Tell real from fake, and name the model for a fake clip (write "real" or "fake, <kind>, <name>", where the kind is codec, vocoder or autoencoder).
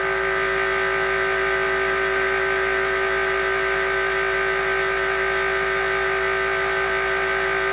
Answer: real